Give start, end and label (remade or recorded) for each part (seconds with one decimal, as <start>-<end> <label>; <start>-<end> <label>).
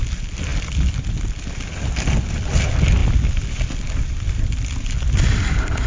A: 0.0-5.9 recorded